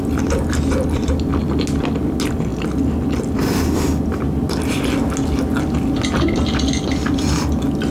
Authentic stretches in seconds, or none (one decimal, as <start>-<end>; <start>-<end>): 0.0-7.9